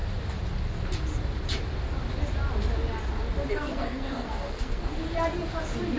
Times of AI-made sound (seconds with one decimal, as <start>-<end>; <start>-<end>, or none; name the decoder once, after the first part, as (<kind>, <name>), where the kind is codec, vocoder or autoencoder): 3.5-4.9 (codec, SNAC)